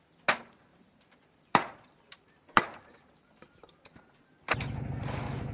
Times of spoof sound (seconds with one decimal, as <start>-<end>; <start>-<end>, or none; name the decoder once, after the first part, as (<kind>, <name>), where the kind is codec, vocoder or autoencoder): 0.7-4.0 (vocoder, BigVGAN v2)